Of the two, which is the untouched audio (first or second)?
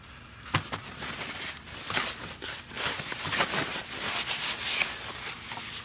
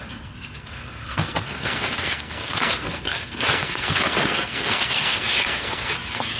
first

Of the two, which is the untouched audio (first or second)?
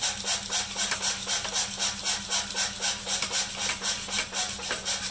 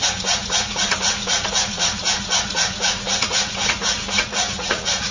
first